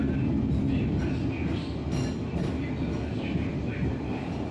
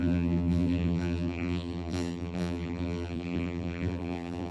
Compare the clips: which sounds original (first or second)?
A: first